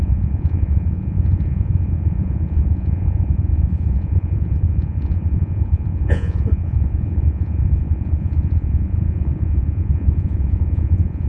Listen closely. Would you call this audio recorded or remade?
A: remade